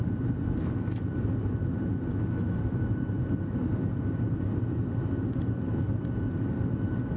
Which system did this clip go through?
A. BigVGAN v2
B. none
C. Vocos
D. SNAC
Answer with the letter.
B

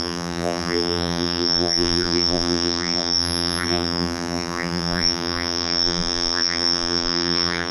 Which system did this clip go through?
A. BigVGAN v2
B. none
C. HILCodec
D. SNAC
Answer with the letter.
A